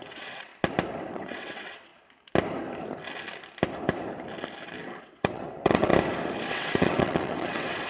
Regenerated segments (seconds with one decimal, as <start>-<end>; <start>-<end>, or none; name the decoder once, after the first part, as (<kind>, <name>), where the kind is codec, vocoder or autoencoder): 0.0-0.5 (vocoder, WaveNeXt); 1.1-1.9; 5.0-5.9; 6.5-7.9